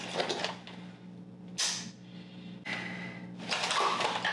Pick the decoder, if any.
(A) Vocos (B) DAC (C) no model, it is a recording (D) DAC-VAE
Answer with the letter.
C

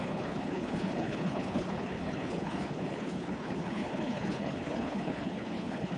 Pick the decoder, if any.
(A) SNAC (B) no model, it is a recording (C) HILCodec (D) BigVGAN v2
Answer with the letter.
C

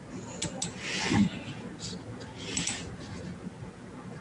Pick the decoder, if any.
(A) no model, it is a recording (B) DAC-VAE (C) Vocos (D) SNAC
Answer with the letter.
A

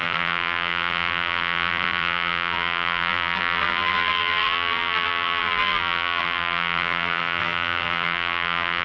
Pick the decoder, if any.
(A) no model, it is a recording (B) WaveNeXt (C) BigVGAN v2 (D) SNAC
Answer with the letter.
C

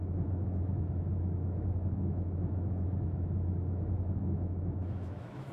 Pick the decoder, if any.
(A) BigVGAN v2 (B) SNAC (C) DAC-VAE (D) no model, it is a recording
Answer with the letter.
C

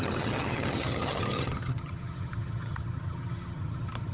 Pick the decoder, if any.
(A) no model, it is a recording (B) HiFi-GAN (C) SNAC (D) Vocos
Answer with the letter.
B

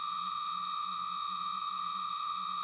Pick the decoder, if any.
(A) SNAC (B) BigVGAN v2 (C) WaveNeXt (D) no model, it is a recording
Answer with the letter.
C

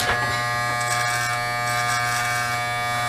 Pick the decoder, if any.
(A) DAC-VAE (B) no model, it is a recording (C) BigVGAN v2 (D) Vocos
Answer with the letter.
B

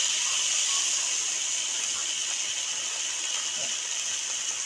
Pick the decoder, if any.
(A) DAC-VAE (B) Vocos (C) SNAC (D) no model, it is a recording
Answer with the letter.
D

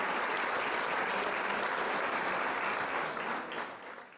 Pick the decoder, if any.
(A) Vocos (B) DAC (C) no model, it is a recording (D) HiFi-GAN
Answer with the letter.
C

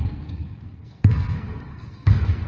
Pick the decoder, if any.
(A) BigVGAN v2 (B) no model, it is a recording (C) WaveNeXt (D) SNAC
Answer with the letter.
D